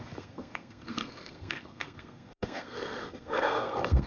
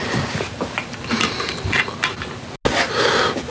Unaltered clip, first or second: second